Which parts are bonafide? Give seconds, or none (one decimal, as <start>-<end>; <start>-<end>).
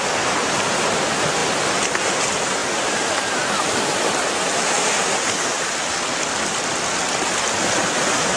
0.0-8.4